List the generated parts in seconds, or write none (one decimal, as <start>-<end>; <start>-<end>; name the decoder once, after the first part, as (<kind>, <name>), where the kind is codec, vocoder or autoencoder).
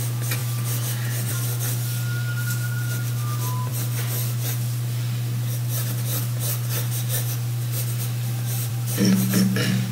3.7-8.7 (vocoder, BigVGAN v2)